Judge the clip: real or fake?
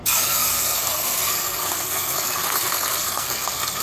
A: fake